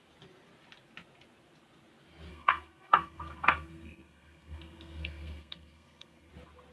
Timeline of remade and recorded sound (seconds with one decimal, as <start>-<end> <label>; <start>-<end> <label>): 0.0-2.3 recorded; 2.3-6.3 remade; 6.3-6.7 recorded